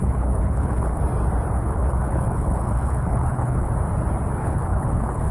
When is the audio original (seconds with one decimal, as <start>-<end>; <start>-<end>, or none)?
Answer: 1.0-1.6; 3.7-4.4